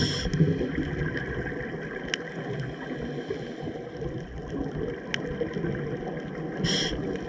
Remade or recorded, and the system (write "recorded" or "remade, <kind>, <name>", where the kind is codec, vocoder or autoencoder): recorded